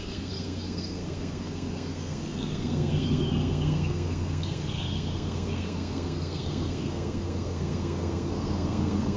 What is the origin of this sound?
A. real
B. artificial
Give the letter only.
B